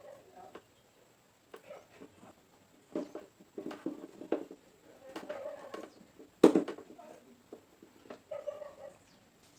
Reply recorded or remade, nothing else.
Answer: recorded